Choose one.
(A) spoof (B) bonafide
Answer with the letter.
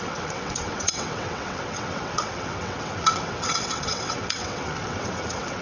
A